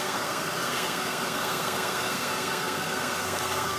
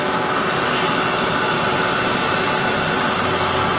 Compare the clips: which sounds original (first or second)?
second